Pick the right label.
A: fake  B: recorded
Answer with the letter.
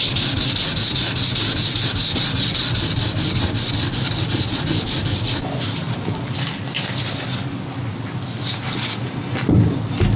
B